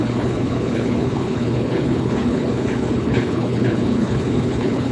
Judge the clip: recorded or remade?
remade